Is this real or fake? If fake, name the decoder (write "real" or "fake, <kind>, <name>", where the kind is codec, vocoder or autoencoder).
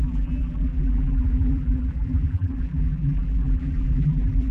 fake, vocoder, BigVGAN v2